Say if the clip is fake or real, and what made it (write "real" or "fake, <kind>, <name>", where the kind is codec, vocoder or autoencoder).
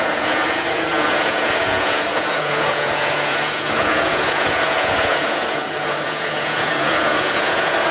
fake, vocoder, Vocos